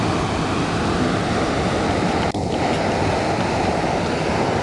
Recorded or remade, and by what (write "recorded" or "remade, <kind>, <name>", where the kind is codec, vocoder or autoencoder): recorded